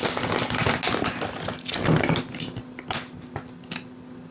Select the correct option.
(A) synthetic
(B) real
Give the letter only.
B